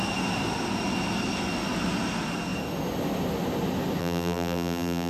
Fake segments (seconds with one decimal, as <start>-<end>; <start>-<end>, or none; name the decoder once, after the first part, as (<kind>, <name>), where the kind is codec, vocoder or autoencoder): 4.0-5.1 (vocoder, BigVGAN v2)